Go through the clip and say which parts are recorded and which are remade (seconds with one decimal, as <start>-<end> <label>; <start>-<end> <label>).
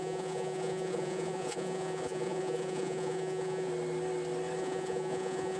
0.0-3.7 remade; 3.7-4.6 recorded; 4.6-5.6 remade